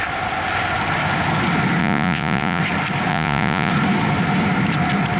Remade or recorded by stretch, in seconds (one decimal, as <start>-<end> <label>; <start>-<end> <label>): 0.0-1.8 recorded; 1.8-2.6 remade; 2.6-3.1 recorded; 3.1-3.7 remade; 3.7-5.2 recorded